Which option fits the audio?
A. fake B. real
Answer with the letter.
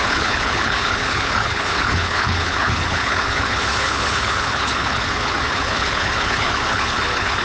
A